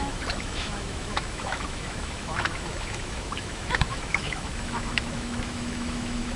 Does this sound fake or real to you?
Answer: fake